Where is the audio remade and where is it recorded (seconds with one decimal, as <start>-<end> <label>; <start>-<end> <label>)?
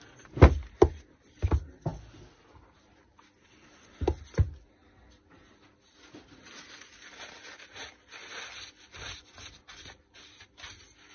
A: 0.0-11.1 recorded